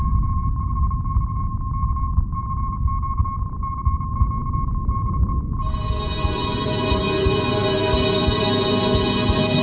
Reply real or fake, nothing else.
real